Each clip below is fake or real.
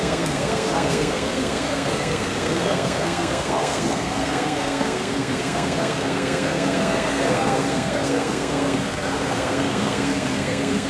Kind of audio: fake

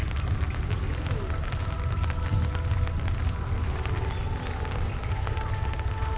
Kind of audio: real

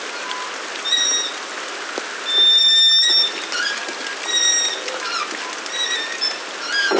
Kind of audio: real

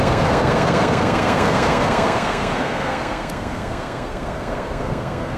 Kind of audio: fake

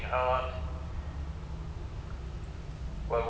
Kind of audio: real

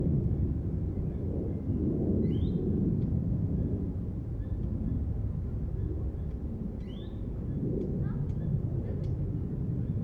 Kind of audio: real